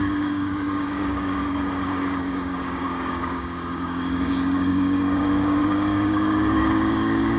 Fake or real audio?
fake